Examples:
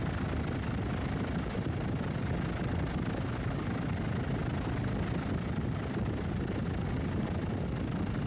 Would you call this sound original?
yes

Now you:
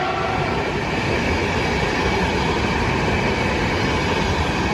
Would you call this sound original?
yes